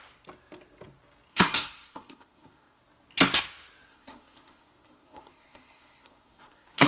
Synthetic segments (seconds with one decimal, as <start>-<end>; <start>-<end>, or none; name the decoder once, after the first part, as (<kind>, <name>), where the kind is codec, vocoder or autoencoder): 1.3-2.8 (codec, SNAC); 3.9-6.9